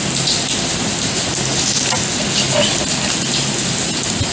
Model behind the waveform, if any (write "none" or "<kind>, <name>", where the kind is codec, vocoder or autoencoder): none